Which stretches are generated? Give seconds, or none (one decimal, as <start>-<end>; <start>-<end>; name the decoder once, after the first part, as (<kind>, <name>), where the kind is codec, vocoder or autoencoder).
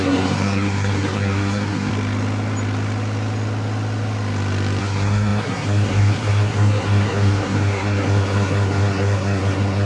0.0-1.9 (codec, SNAC); 4.8-9.9